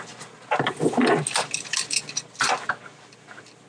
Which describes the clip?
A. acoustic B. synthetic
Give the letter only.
A